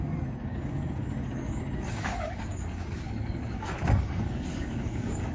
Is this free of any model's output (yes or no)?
no